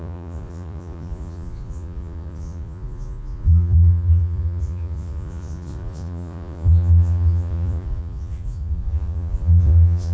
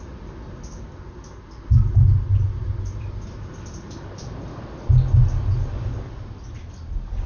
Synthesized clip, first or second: first